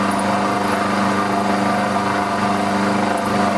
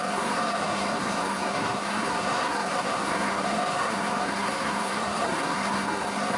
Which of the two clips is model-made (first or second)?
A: second